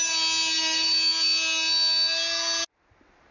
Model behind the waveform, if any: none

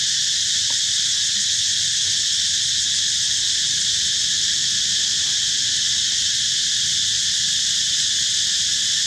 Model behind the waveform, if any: none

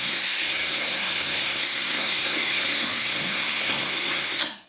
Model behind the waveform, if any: codec, SNAC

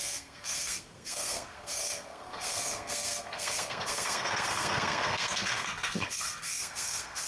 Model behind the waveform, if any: codec, SNAC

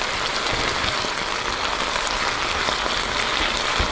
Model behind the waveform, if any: none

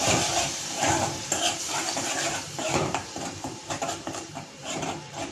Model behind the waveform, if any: vocoder, BigVGAN v2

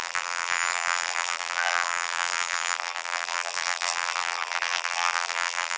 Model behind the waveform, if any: vocoder, BigVGAN v2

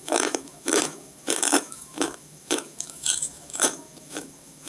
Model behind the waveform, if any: autoencoder, DAC-VAE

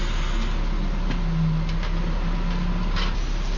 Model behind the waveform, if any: none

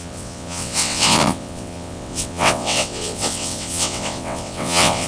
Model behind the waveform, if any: vocoder, WaveNeXt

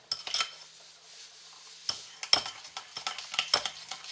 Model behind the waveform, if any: none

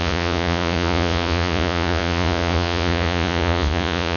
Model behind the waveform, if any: vocoder, Vocos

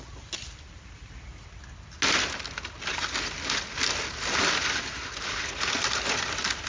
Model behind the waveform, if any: none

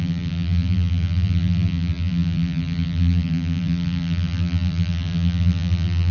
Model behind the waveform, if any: vocoder, BigVGAN v2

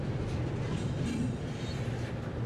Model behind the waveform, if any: none